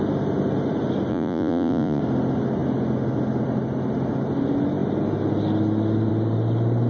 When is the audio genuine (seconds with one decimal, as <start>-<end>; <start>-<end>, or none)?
0.0-1.1; 2.0-6.9